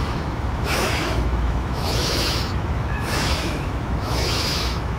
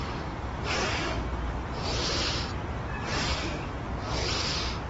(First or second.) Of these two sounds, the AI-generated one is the first